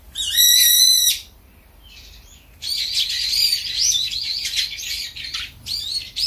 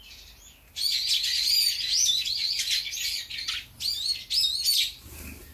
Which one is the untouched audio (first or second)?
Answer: second